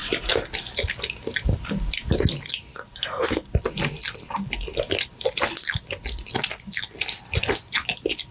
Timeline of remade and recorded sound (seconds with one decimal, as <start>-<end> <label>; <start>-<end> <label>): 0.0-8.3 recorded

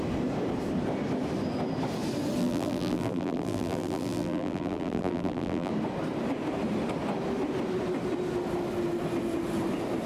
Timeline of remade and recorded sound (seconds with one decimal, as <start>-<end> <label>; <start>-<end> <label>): 0.0-2.4 recorded; 2.4-5.7 remade; 5.7-10.1 recorded

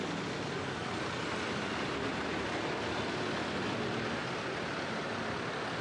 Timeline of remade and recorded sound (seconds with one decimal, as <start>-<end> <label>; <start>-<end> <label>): 0.0-4.2 recorded; 4.2-5.2 remade; 5.2-5.8 recorded

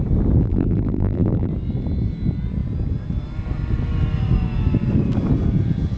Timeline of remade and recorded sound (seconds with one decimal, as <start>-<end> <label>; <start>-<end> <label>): 0.0-0.4 recorded; 0.4-1.5 remade; 1.5-6.0 recorded